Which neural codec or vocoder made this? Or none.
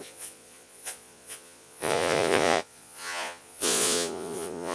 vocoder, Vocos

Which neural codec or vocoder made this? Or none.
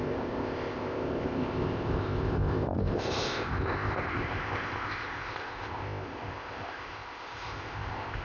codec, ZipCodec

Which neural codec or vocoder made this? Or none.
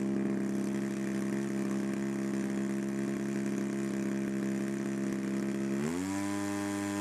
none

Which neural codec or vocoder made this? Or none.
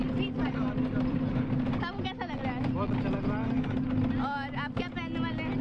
none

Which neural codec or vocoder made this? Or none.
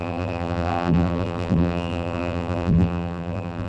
vocoder, BigVGAN v2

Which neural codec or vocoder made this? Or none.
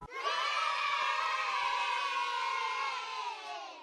vocoder, BigVGAN v2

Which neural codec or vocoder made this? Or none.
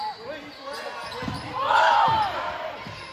none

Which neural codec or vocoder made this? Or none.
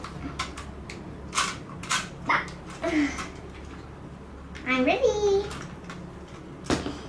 none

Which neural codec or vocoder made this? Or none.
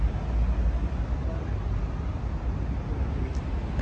none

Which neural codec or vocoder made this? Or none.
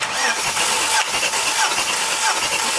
none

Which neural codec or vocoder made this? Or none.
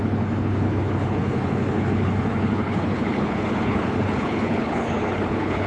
codec, HILCodec